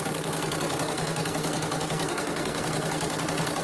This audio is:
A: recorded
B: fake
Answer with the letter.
B